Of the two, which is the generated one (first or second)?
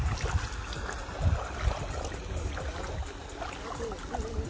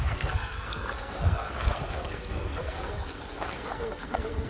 second